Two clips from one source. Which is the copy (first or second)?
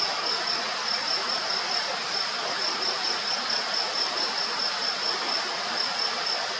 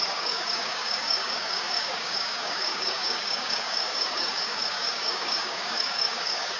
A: second